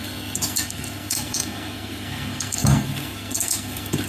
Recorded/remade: remade